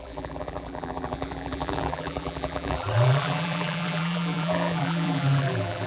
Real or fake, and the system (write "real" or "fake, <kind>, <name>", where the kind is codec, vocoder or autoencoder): fake, vocoder, BigVGAN v2